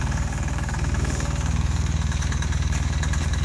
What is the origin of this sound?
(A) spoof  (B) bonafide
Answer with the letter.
A